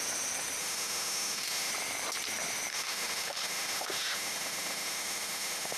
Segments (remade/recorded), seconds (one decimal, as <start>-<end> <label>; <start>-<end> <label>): 0.0-0.6 recorded; 0.6-1.7 remade; 1.7-2.7 recorded; 2.7-5.8 remade